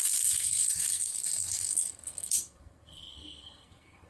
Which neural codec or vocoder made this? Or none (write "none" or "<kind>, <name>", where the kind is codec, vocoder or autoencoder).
codec, SNAC